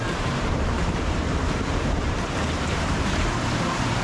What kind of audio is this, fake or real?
fake